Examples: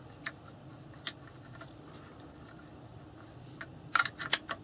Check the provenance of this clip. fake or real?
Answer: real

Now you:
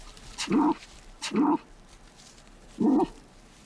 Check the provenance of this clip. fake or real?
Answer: fake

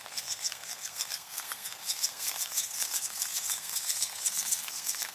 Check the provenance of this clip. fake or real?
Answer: fake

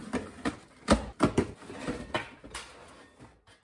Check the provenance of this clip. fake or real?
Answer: real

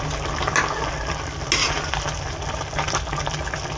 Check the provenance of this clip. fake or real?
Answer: real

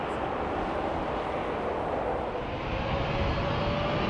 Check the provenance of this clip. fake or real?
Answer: real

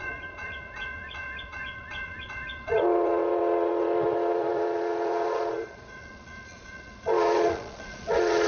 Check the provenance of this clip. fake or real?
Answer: fake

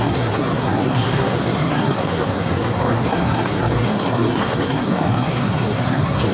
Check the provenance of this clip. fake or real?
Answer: fake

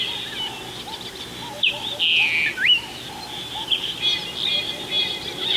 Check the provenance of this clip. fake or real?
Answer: real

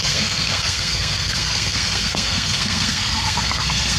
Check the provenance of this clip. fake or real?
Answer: fake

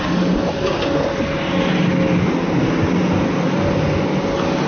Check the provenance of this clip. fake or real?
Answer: real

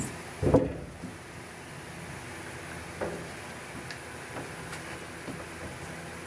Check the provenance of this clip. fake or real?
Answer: real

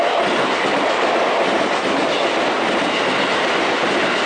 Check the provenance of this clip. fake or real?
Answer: real